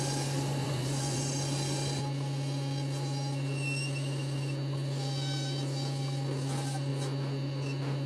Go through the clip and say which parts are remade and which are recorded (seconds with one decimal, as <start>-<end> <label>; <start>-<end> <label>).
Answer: 0.0-0.6 recorded; 0.6-1.2 remade; 1.2-8.1 recorded